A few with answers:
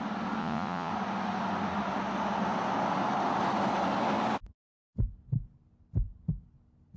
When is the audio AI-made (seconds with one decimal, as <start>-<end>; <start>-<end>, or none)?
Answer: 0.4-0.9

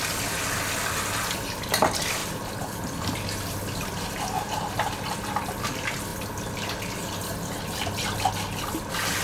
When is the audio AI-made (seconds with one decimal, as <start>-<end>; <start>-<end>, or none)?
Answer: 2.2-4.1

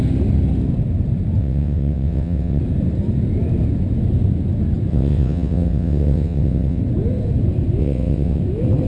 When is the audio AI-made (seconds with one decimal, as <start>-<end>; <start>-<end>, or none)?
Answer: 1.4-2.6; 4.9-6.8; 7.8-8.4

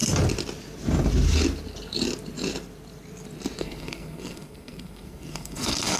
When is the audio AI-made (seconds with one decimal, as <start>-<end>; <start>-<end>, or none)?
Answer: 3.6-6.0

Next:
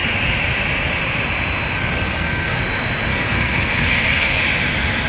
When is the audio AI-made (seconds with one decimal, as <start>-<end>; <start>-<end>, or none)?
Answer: 1.8-2.6; 3.1-4.4

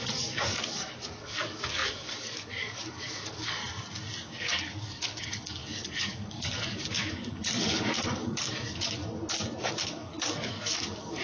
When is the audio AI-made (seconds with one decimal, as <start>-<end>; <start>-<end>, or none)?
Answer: 0.0-3.6; 4.2-9.0; 9.6-11.2